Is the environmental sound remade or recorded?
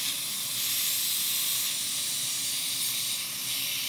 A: recorded